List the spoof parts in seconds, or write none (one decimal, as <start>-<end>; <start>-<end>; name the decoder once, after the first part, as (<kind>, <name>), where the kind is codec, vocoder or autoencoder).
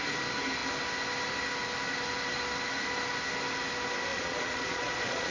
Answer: 4.1-5.3 (vocoder, Vocos)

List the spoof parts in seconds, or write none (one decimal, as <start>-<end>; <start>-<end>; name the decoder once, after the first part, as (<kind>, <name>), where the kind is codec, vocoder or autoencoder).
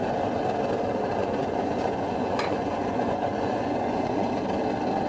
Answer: 1.2-4.3 (vocoder, Vocos)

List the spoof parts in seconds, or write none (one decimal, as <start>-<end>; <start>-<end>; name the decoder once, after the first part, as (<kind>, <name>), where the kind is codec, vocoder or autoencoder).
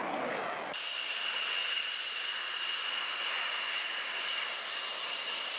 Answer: none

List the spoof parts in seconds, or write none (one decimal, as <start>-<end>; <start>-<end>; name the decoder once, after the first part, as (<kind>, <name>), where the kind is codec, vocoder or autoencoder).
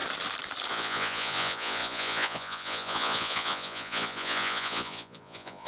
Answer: 0.7-5.7 (vocoder, Vocos)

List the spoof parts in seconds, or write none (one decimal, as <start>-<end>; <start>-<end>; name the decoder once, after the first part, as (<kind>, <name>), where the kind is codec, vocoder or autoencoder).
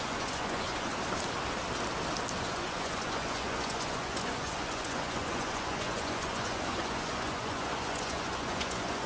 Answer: 0.0-0.9 (vocoder, Vocos); 2.4-9.1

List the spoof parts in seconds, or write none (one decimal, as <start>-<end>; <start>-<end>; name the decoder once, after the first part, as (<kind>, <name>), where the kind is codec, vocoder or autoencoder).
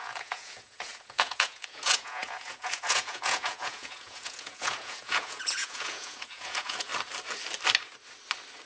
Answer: 0.0-6.9 (vocoder, Vocos)